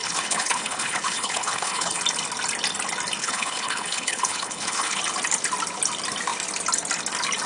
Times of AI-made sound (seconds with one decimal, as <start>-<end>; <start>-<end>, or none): 0.0-2.0; 3.2-5.0

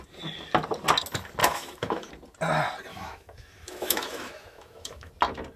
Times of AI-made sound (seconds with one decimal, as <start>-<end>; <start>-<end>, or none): 1.4-2.1; 2.9-5.1